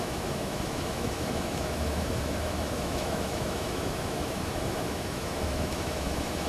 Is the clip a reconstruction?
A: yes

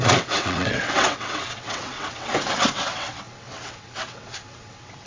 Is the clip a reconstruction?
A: yes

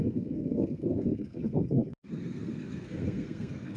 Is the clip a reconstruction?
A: yes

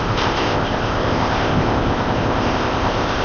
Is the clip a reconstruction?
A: yes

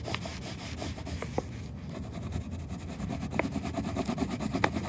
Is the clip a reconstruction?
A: no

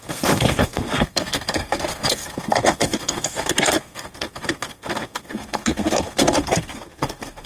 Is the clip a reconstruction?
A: yes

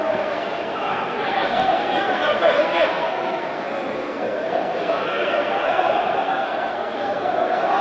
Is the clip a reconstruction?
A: yes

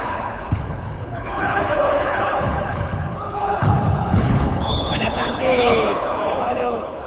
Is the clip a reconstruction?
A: yes